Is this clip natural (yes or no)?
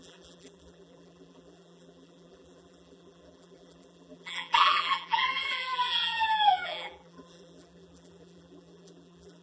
no